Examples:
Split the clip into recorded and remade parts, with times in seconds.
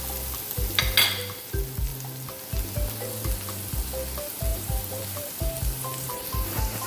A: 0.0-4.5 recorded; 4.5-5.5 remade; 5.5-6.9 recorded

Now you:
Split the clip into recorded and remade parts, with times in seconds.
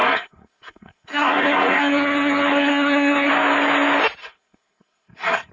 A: 0.0-3.3 remade; 3.3-4.2 recorded; 4.2-5.5 remade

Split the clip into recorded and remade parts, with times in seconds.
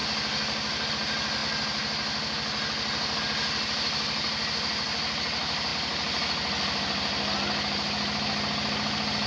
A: 0.0-9.3 recorded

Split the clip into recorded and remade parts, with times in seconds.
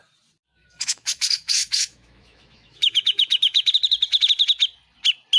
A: 0.0-0.5 recorded; 0.5-3.7 remade; 3.7-5.4 recorded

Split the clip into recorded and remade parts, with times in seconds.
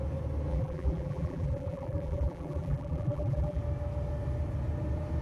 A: 0.0-0.5 recorded; 0.5-3.6 remade; 3.6-5.2 recorded